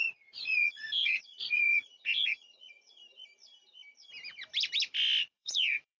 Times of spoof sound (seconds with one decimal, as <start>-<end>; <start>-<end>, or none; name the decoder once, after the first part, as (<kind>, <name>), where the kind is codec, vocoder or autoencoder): 0.0-3.0 (vocoder, Vocos); 5.2-6.0